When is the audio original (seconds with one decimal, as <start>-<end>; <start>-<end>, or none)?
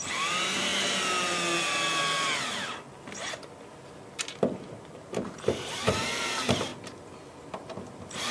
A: 0.7-4.8; 6.7-8.3